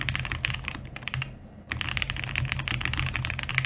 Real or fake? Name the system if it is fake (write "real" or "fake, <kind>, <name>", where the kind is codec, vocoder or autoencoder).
real